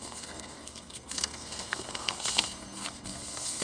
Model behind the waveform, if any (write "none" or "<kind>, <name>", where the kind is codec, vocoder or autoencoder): codec, SNAC